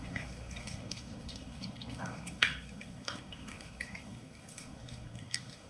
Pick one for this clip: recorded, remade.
remade